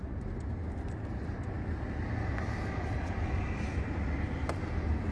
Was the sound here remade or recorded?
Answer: recorded